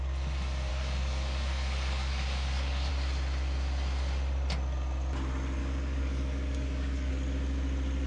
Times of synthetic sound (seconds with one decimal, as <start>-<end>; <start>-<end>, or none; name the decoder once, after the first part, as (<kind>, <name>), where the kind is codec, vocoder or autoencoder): 0.7-2.9 (codec, DAC); 5.6-7.1